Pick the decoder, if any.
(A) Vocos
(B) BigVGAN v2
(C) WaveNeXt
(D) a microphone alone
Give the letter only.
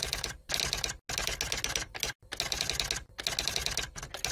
D